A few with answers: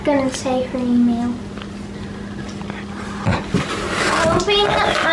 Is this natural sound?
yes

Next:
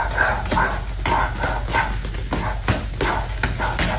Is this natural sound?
yes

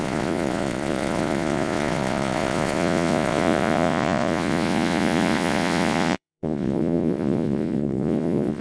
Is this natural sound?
no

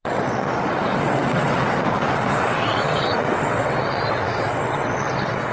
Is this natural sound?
no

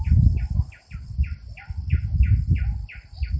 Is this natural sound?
yes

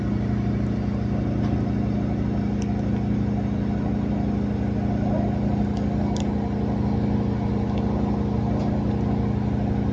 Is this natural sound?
yes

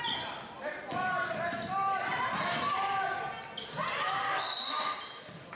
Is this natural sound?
yes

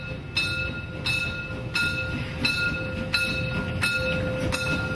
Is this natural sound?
yes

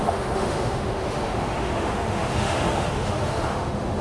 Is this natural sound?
no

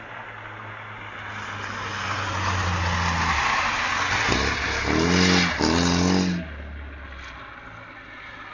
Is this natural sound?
yes